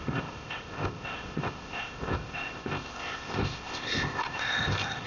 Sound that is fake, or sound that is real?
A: fake